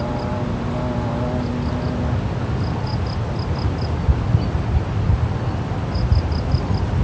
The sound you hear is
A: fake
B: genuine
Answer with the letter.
B